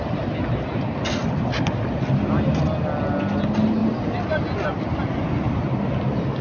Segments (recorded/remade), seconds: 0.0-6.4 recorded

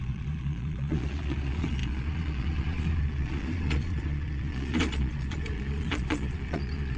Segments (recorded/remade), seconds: 0.0-7.0 remade

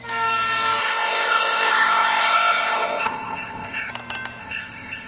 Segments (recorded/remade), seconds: 0.0-0.8 recorded; 0.8-3.9 remade; 3.9-4.4 recorded; 4.4-5.1 remade

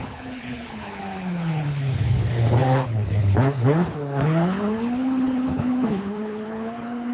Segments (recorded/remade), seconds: 0.0-7.1 remade

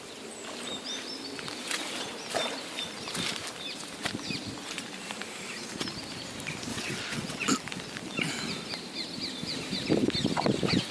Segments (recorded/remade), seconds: 0.0-6.7 recorded; 6.7-7.5 remade; 7.5-10.9 recorded

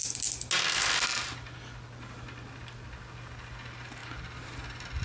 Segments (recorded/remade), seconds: 0.0-5.0 recorded

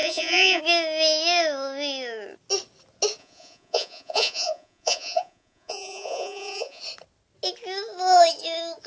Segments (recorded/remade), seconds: 0.0-0.6 remade; 0.6-3.2 recorded; 3.2-6.8 remade; 6.8-8.9 recorded

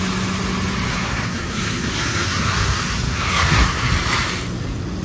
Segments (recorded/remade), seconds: 0.0-0.9 recorded; 0.9-3.9 remade; 3.9-5.0 recorded